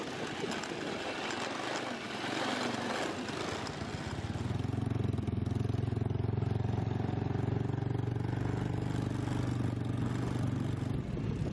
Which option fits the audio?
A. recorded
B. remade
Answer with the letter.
A